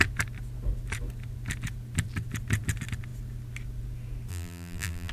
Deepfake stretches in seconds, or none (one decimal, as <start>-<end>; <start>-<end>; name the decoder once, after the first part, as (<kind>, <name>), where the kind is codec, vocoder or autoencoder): 4.3-5.1 (vocoder, BigVGAN v2)

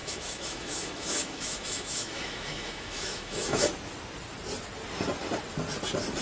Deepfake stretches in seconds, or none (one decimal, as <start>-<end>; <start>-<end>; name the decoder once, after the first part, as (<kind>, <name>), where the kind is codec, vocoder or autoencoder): 0.0-3.7 (autoencoder, DAC-VAE)

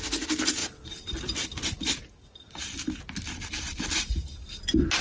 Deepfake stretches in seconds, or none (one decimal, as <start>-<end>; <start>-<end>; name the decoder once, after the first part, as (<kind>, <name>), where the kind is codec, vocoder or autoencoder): none